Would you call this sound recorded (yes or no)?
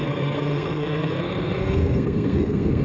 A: no